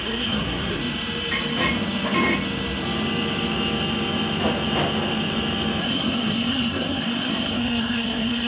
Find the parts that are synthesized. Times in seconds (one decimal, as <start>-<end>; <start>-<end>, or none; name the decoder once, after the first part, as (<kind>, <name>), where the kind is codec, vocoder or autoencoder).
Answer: 0.0-0.8 (codec, SNAC); 5.8-8.5